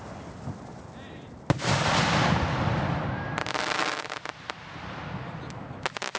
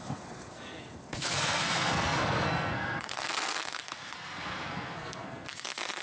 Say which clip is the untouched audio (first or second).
first